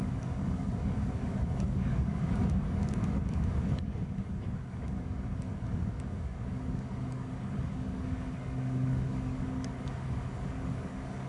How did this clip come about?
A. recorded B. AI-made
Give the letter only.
B